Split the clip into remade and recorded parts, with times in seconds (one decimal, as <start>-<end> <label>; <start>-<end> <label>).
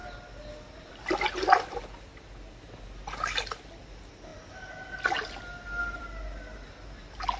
0.0-4.3 recorded; 4.3-6.0 remade; 6.0-7.4 recorded